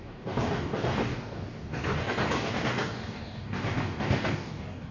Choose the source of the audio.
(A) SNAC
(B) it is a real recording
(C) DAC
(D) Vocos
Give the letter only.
C